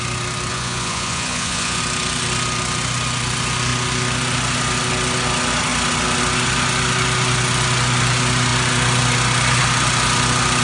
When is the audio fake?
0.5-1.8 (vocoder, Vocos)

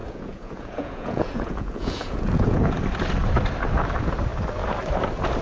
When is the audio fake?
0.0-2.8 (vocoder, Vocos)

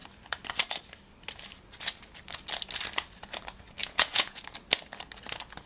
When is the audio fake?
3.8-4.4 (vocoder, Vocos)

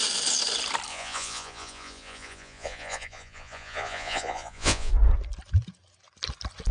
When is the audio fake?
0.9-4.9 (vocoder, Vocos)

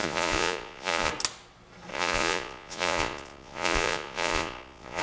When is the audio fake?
0.0-1.1 (vocoder, Vocos); 1.9-5.0